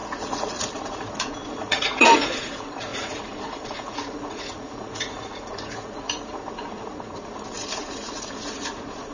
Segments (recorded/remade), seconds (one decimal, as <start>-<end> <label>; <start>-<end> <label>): 0.0-9.1 remade